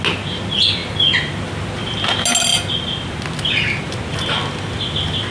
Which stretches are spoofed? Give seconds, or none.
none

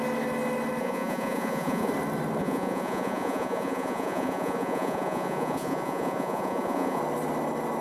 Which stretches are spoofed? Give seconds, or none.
0.8-1.9 (vocoder, Vocos); 2.4-7.0